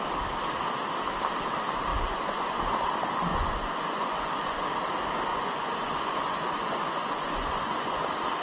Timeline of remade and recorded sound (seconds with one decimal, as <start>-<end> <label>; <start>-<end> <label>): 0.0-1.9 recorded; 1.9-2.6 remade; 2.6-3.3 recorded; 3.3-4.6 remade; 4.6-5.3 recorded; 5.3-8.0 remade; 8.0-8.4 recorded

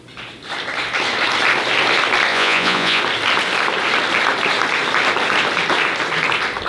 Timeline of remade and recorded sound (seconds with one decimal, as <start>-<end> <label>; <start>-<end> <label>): 0.0-2.3 recorded; 2.3-3.0 remade; 3.0-6.7 recorded

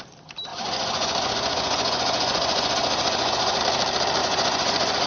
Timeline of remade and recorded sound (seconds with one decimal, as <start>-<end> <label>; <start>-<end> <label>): 0.0-0.5 recorded; 0.5-3.6 remade; 3.6-4.2 recorded; 4.2-5.1 remade

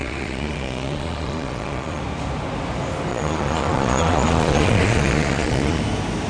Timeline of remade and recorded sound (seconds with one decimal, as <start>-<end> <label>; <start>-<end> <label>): 0.0-2.0 remade; 2.0-3.1 recorded; 3.1-5.8 remade; 5.8-6.3 recorded

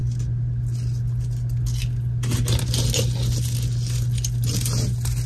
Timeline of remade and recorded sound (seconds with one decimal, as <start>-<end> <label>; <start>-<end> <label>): 0.0-5.3 recorded

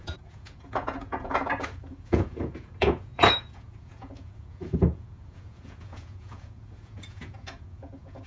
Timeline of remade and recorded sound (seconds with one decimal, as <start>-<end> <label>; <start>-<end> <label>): 0.0-8.3 remade

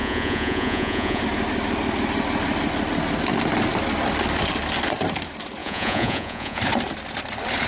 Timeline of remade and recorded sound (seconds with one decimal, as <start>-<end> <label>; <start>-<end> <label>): 0.0-1.2 remade; 1.2-5.6 recorded; 5.6-6.6 remade; 6.6-7.7 recorded